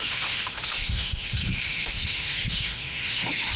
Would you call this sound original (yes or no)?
no